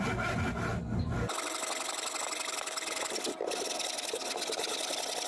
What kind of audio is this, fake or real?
real